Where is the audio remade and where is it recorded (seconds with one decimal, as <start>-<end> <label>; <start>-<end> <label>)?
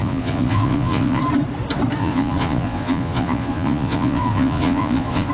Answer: 0.0-1.2 remade; 1.2-2.0 recorded; 2.0-5.3 remade